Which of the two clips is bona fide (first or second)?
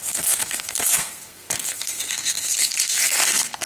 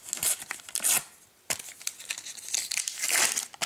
second